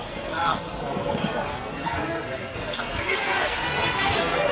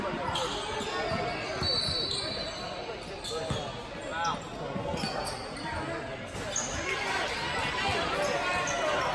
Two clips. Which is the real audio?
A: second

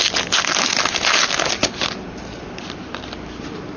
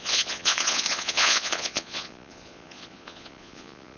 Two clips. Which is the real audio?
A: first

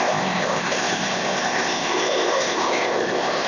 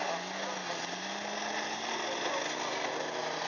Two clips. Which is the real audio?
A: second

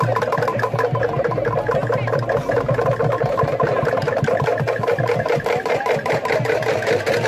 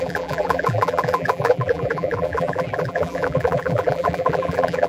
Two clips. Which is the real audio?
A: first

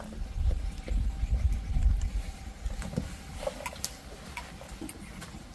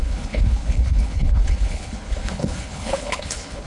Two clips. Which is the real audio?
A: first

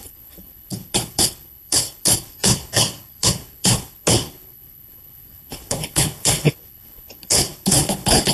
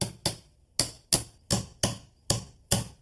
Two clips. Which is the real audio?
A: second